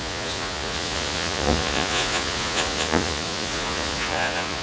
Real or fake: fake